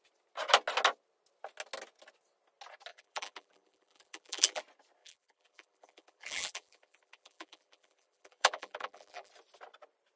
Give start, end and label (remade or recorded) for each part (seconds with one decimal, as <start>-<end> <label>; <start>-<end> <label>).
0.0-2.9 recorded; 2.9-4.6 remade; 4.6-5.0 recorded; 5.0-9.3 remade; 9.3-10.2 recorded